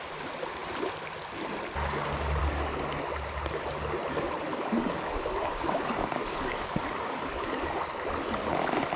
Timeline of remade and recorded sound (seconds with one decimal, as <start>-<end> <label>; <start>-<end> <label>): 0.0-4.5 recorded; 4.5-7.8 remade; 7.8-9.0 recorded